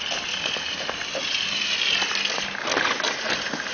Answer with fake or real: fake